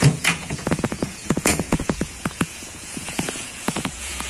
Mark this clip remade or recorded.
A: remade